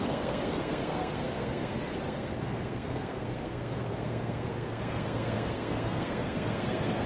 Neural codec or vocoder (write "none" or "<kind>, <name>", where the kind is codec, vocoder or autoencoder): codec, SNAC